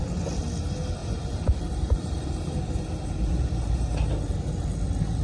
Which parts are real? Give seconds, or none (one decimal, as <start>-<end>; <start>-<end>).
0.0-1.0; 4.1-5.2